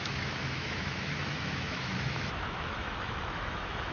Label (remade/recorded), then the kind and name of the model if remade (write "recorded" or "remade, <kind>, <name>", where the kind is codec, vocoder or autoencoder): remade, autoencoder, DAC-VAE